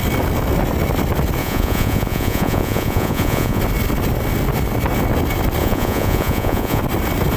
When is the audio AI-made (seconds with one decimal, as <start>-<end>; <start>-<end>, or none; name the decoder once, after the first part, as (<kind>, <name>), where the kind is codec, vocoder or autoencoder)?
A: 1.4-3.6 (vocoder, Vocos); 5.6-6.8